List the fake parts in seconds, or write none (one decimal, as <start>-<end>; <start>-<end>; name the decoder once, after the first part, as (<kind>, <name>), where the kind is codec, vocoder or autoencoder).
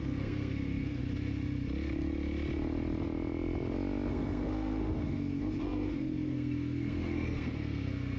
0.0-1.0 (codec, SNAC); 4.1-8.2